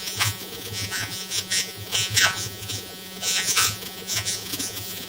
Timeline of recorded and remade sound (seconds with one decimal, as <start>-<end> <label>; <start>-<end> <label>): 0.0-5.1 remade